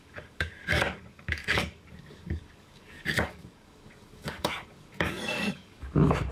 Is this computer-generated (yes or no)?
yes